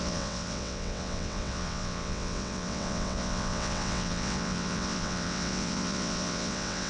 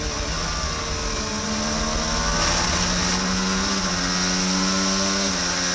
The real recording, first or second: second